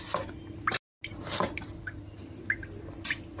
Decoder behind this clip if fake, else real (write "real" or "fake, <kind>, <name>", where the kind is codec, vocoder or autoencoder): real